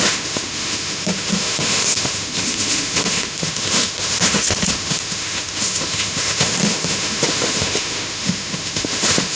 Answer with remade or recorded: remade